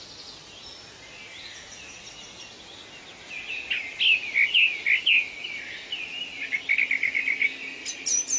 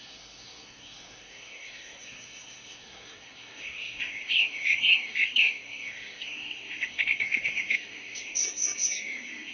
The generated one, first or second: second